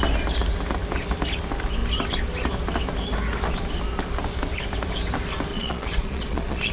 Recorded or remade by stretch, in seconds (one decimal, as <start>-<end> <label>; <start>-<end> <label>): 0.0-5.5 recorded; 5.5-6.7 remade